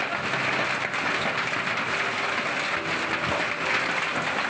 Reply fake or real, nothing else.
real